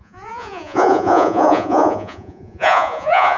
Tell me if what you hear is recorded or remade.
remade